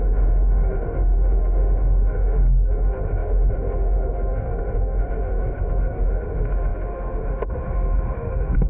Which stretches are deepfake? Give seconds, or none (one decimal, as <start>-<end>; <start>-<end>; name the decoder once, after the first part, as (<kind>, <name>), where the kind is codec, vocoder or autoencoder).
0.0-8.7 (autoencoder, DAC-VAE)